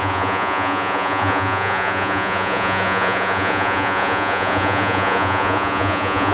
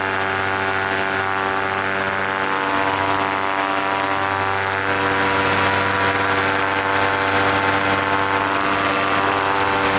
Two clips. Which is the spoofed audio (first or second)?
first